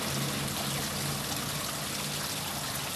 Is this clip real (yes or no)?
yes